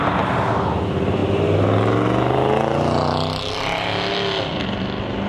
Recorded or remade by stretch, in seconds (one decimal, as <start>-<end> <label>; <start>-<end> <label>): 0.0-5.3 recorded